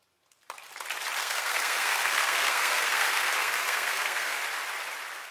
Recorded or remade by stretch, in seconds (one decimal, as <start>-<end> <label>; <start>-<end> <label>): 0.0-1.2 recorded; 1.2-4.4 remade; 4.4-5.3 recorded